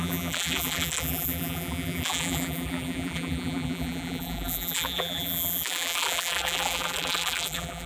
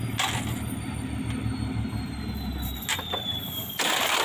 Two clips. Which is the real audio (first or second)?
second